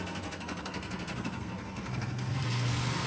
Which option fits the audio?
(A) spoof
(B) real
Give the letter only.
A